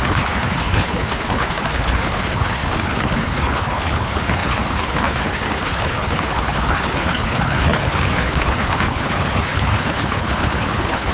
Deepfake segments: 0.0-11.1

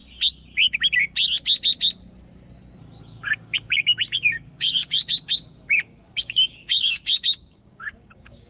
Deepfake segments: 3.0-8.5

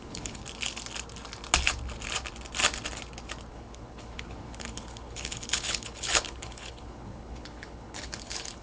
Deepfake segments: 0.0-0.4; 3.5-8.6

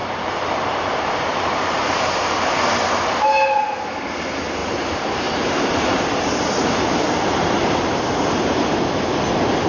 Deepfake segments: 0.0-2.4; 4.6-9.0

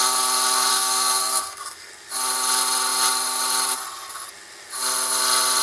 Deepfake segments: 0.7-1.9

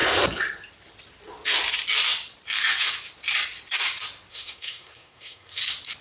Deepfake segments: 4.3-5.6

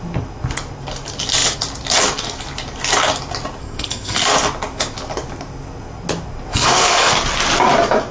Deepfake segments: 3.6-4.2; 6.5-7.1